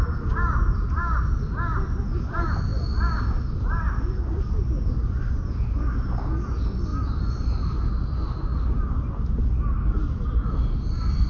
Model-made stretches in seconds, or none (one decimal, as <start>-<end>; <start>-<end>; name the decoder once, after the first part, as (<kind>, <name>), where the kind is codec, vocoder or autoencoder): none